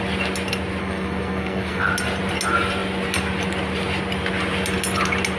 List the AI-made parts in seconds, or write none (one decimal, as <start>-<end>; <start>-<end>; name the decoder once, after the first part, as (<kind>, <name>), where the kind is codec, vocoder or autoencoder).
0.8-1.9 (codec, SNAC)